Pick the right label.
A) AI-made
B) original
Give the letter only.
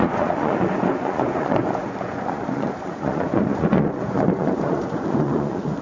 A